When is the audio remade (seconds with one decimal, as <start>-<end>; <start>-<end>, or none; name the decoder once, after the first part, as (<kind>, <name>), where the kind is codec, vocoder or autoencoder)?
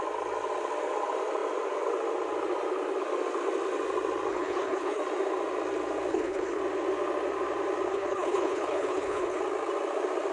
4.3-5.0 (codec, HILCodec); 6.1-6.6; 7.9-9.4